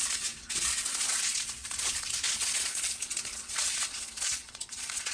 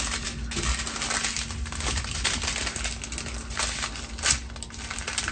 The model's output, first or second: first